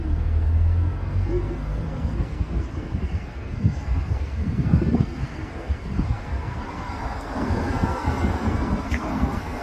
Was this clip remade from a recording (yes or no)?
yes